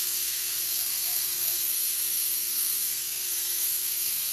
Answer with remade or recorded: remade